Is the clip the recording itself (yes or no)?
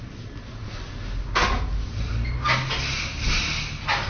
yes